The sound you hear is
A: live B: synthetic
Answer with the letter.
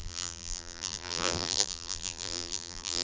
B